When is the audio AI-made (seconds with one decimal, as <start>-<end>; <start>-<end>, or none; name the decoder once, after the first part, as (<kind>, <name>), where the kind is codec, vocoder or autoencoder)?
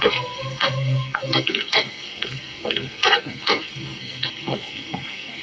0.0-5.4 (codec, SNAC)